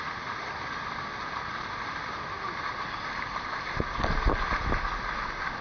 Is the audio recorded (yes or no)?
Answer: yes